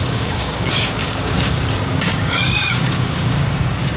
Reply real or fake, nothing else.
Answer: fake